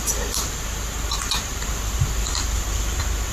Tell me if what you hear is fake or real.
real